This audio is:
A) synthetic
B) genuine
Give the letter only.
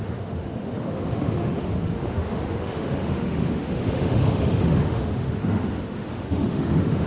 A